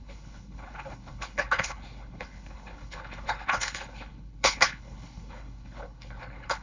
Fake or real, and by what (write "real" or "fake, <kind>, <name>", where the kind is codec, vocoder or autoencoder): fake, codec, HILCodec